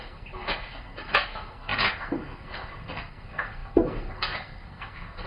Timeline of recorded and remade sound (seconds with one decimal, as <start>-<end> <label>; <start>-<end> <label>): 0.0-5.3 remade